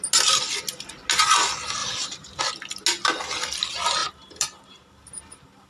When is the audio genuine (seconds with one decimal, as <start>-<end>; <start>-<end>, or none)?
0.0-1.8; 2.4-4.0; 5.2-5.7